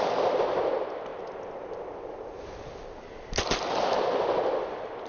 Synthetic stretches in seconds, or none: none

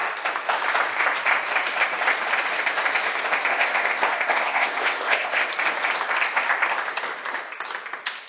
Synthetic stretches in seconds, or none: 3.5-5.5